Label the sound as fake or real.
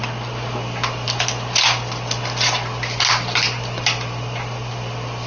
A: real